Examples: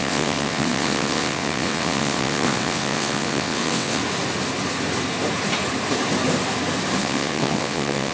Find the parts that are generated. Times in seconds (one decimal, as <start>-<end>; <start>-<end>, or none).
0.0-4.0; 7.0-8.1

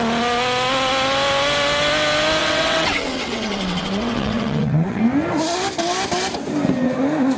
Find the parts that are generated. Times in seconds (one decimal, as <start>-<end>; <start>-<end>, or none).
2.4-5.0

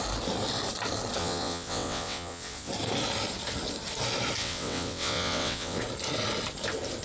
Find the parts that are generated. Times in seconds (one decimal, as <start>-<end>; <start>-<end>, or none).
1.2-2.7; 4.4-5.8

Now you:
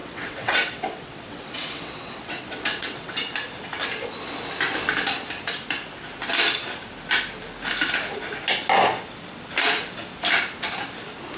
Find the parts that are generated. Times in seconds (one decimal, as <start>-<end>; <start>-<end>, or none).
0.0-3.1

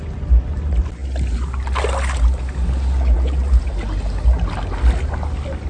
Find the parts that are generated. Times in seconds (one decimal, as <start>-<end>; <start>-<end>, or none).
none

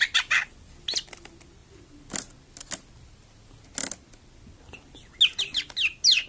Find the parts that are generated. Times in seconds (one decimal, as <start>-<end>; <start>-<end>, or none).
none

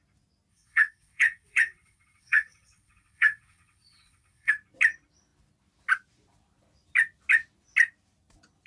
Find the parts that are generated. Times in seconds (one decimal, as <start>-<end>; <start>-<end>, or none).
0.5-4.5

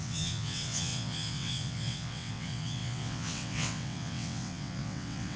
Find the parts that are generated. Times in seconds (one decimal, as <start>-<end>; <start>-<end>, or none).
0.0-5.4